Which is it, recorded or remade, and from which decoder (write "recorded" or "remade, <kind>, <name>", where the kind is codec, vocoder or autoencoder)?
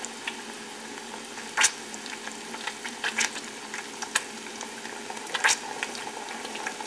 recorded